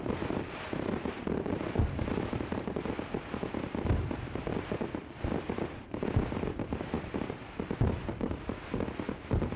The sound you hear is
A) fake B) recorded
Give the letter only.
A